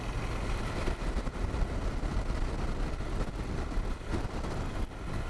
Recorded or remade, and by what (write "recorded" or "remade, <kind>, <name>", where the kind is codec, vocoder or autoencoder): recorded